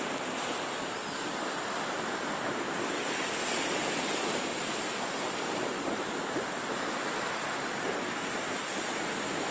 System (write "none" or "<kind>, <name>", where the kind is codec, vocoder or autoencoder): none